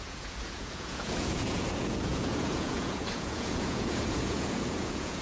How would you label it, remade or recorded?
remade